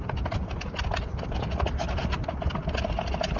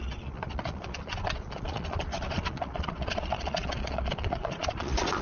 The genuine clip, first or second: first